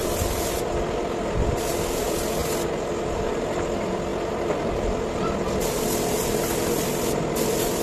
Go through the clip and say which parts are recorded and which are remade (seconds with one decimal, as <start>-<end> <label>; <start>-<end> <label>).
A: 0.0-7.8 remade